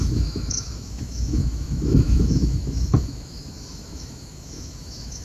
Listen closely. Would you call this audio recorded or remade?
remade